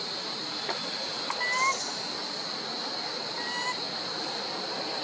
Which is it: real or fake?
real